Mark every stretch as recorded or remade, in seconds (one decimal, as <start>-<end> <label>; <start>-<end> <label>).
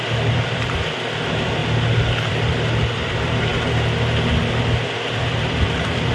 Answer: 0.0-1.6 remade; 1.6-2.3 recorded; 2.3-3.5 remade; 3.5-4.6 recorded; 4.6-6.1 remade